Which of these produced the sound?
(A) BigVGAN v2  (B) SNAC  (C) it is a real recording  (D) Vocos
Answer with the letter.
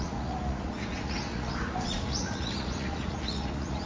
D